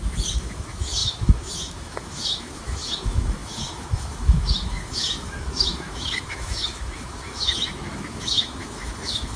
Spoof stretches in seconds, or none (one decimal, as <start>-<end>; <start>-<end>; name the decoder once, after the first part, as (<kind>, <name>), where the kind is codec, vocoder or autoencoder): 0.0-9.4 (autoencoder, DAC-VAE)